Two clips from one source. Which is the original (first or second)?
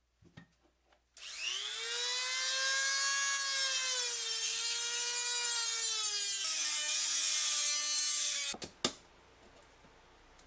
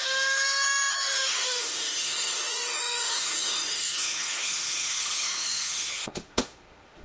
first